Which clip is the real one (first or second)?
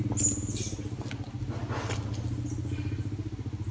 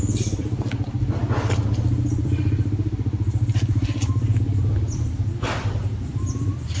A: first